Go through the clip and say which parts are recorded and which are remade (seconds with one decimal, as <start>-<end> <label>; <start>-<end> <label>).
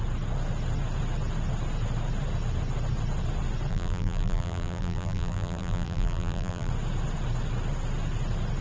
0.0-3.7 recorded; 3.7-6.7 remade; 6.7-8.6 recorded